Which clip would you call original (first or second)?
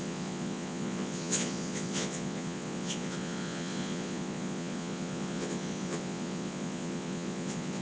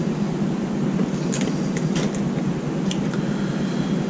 second